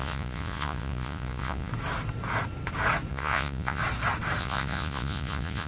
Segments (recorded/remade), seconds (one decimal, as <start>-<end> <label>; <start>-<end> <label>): 0.0-1.7 remade; 1.7-3.1 recorded; 3.1-3.8 remade; 3.8-4.4 recorded; 4.4-5.7 remade

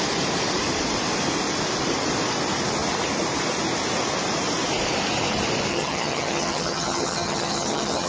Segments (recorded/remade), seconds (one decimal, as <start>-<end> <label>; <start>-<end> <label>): 0.0-5.7 recorded; 5.7-8.1 remade